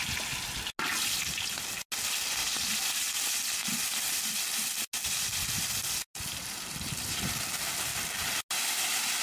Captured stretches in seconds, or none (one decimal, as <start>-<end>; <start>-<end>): 0.0-9.2